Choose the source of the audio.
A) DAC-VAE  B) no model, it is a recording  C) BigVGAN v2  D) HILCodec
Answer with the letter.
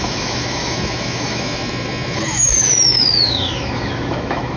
A